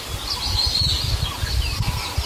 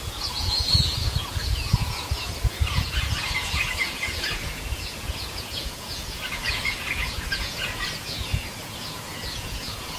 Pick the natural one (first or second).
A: first